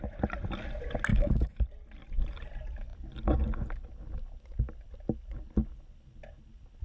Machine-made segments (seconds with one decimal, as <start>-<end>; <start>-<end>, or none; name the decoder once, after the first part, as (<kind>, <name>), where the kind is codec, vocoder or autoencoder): 1.1-1.6 (autoencoder, DAC-VAE)